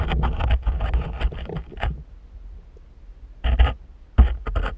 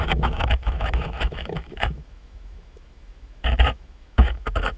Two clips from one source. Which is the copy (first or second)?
second